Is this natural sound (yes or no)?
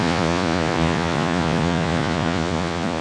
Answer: no